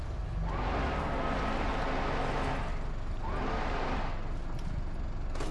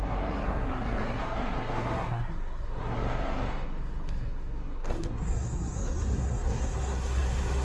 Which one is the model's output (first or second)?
second